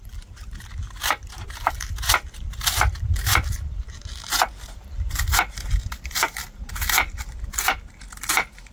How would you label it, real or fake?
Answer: fake